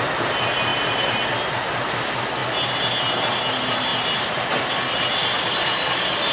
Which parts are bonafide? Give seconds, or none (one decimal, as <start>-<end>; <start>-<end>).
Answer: 0.0-6.3